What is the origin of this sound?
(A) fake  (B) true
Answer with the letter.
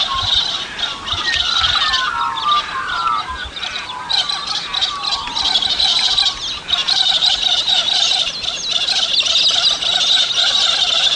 B